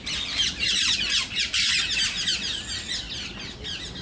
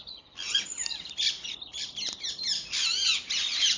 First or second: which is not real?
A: second